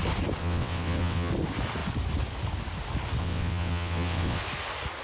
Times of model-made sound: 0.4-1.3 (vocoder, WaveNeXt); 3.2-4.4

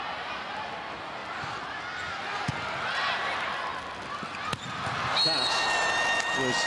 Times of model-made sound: none

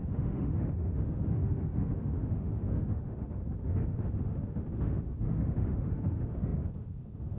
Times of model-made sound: 0.0-7.4 (autoencoder, DAC-VAE)